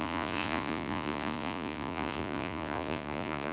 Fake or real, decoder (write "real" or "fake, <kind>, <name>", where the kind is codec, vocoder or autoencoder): fake, vocoder, Vocos